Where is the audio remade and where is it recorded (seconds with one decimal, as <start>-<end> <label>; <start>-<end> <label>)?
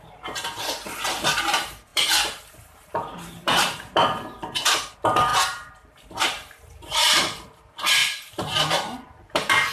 0.0-8.0 remade; 8.0-8.6 recorded; 8.6-9.7 remade